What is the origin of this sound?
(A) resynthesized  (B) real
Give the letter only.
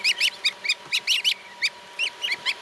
B